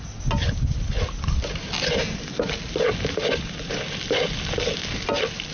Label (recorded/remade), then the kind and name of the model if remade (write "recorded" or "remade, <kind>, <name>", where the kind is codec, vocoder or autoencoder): recorded